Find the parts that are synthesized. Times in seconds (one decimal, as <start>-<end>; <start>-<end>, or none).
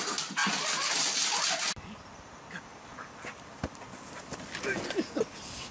none